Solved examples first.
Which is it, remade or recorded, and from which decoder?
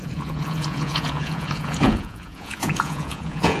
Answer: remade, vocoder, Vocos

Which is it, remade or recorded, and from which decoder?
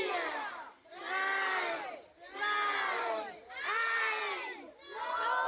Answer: recorded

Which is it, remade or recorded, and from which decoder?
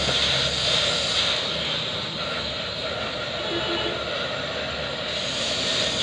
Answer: recorded